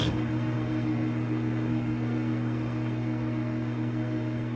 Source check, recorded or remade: remade